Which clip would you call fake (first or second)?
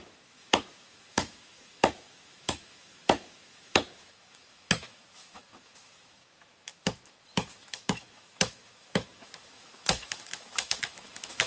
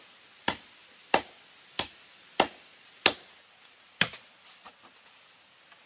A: first